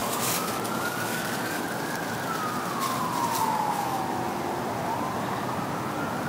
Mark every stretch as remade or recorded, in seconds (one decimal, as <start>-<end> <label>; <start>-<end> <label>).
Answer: 0.0-1.6 remade; 1.6-3.4 recorded; 3.4-4.0 remade; 4.0-6.3 recorded